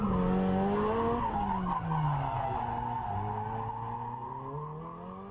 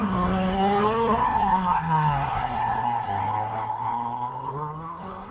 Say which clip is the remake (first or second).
second